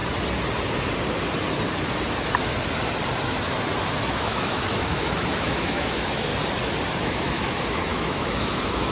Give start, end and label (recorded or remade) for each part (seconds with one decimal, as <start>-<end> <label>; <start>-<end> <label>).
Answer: 0.0-4.2 recorded; 4.2-6.3 remade; 6.3-7.0 recorded; 7.0-8.9 remade